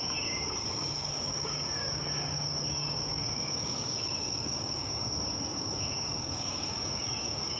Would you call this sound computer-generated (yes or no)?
yes